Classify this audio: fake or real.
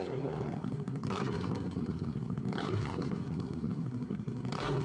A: fake